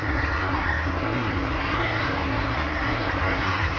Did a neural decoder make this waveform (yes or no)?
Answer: yes